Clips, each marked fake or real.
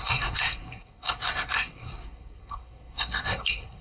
fake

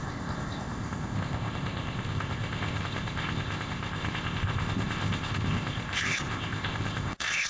fake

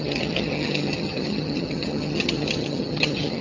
fake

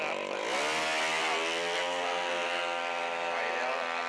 real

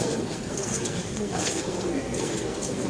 fake